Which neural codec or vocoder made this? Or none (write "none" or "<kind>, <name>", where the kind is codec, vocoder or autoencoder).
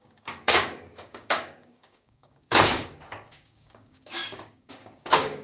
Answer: codec, DAC